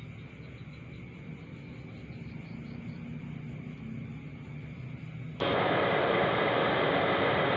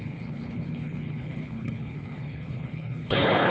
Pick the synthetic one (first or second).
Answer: second